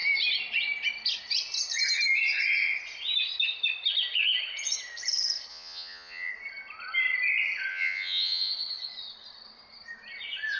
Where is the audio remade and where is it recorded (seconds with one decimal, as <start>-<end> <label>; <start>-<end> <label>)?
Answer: 0.0-5.5 recorded; 5.5-6.3 remade; 6.3-7.7 recorded; 7.7-8.5 remade; 8.5-10.6 recorded

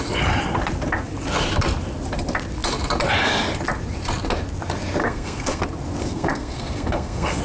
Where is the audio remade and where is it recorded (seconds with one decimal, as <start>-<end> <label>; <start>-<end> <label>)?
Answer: 0.0-5.0 recorded; 5.0-5.6 remade; 5.6-6.0 recorded; 6.0-7.4 remade

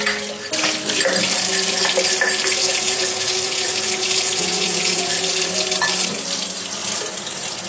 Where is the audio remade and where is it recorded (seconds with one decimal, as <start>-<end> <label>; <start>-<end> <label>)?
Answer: 0.0-2.6 recorded; 2.6-5.1 remade; 5.1-7.7 recorded

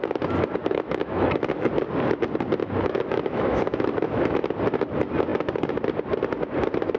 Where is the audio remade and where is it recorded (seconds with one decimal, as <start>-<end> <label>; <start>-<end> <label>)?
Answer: 0.0-0.6 recorded; 0.6-1.7 remade; 1.7-2.6 recorded; 2.6-4.2 remade; 4.2-7.0 recorded

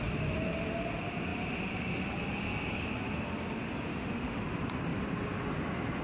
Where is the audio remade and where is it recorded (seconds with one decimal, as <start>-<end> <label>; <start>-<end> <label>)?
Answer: 0.0-3.9 recorded; 3.9-4.4 remade; 4.4-6.0 recorded

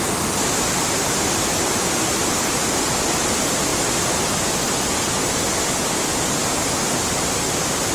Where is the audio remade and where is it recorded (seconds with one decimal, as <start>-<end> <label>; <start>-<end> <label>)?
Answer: 0.0-7.9 recorded